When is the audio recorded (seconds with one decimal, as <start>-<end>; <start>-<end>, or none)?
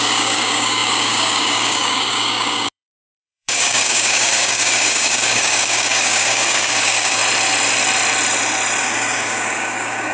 7.2-8.8